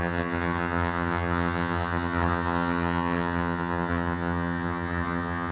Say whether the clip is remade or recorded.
remade